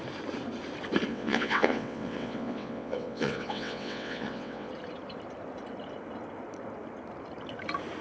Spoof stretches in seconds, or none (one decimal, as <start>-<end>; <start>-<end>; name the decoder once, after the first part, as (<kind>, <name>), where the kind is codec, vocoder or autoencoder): 1.1-4.7 (vocoder, WaveNeXt)